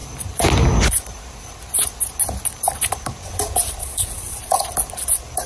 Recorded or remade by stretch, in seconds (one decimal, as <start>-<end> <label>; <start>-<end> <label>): 0.0-3.8 recorded; 3.8-4.7 remade; 4.7-5.5 recorded